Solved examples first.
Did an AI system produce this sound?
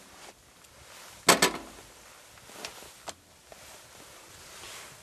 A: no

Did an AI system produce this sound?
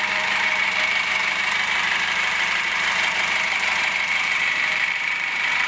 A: yes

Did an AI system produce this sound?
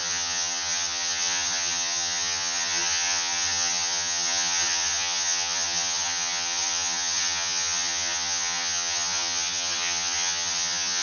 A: yes